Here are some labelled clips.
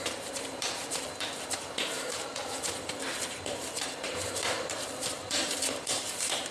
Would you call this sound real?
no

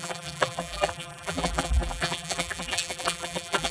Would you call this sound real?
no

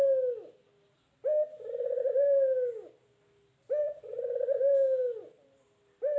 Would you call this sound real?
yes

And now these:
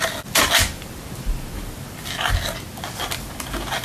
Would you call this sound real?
yes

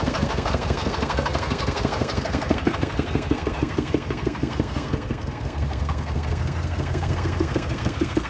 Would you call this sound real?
no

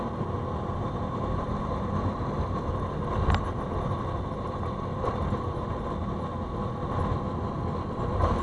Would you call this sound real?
yes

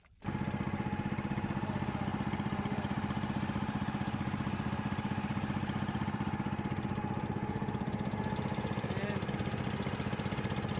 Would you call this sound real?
yes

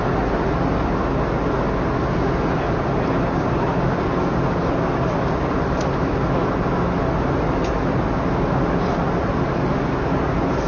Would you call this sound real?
yes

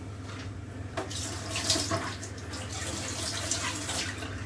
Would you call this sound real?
yes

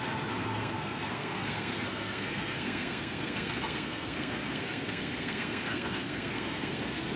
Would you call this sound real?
no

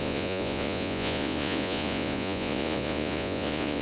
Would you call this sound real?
no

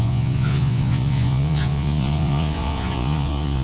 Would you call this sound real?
no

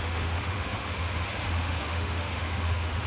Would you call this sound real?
no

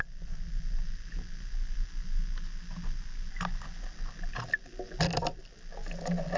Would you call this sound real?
yes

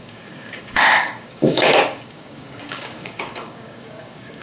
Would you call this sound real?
no